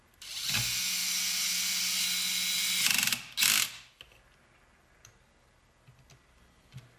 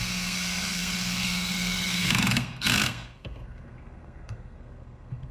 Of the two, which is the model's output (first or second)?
second